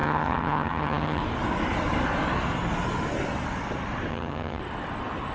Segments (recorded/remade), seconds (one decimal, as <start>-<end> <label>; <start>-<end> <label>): 0.0-1.2 remade; 1.2-4.1 recorded; 4.1-4.6 remade; 4.6-5.3 recorded

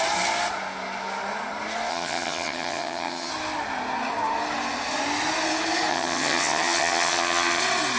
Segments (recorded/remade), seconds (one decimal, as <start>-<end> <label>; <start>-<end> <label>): 0.0-1.9 recorded; 1.9-3.3 remade; 3.3-5.9 recorded; 5.9-7.6 remade; 7.6-8.0 recorded

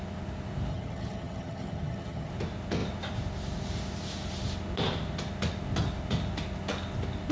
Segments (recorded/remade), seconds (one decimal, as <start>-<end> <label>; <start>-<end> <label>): 0.0-0.7 recorded; 0.7-2.3 remade; 2.3-7.3 recorded

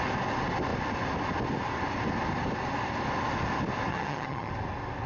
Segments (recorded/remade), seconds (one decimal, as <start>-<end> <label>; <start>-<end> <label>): 0.0-3.9 recorded; 3.9-4.5 remade; 4.5-5.1 recorded